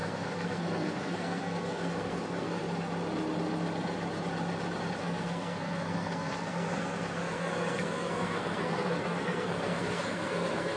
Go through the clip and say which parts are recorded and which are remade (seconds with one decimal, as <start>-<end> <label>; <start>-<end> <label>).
0.0-2.6 remade; 2.6-5.0 recorded; 5.0-10.8 remade